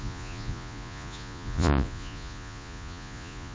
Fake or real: fake